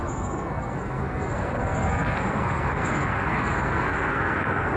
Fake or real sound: fake